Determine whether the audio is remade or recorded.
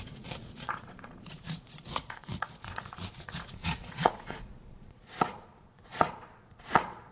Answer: remade